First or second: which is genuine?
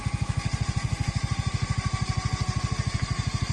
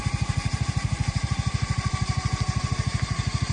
first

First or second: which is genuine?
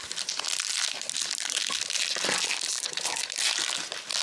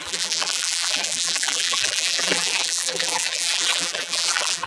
first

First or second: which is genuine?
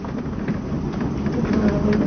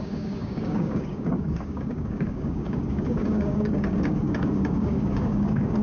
first